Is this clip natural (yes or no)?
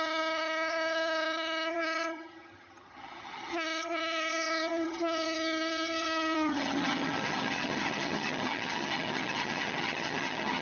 no